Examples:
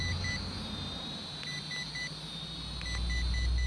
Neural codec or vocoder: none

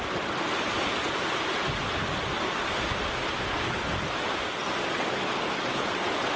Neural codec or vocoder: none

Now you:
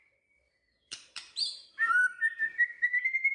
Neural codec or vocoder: vocoder, BigVGAN v2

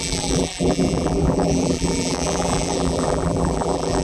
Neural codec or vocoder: vocoder, BigVGAN v2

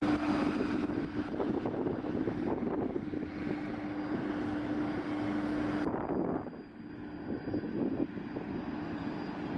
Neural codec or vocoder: none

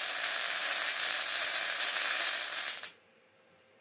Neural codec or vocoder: vocoder, BigVGAN v2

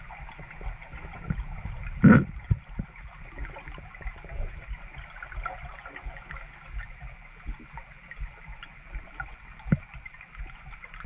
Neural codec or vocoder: none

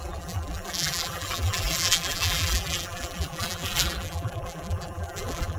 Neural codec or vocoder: vocoder, BigVGAN v2